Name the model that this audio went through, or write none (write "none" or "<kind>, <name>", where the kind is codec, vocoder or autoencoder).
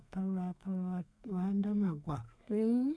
codec, SNAC